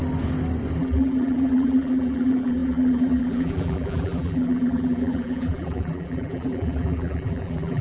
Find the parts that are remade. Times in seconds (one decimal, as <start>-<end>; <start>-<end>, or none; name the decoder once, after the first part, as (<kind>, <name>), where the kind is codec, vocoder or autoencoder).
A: 0.8-7.8 (vocoder, BigVGAN v2)